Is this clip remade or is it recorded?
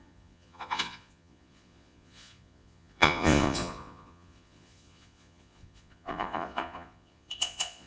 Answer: remade